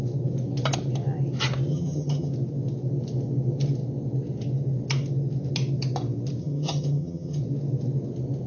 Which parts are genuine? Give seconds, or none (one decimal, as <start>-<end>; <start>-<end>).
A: 0.0-1.7; 2.3-6.4; 7.4-8.5